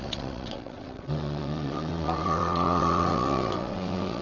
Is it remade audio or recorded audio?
remade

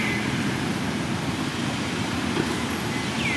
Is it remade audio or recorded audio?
recorded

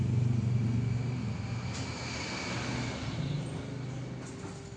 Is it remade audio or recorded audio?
recorded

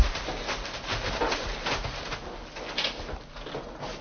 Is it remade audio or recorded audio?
recorded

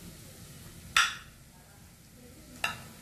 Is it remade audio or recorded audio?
recorded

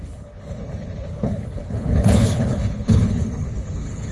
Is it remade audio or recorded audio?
remade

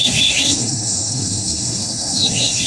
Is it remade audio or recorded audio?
remade